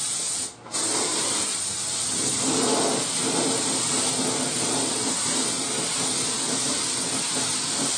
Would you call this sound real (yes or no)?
yes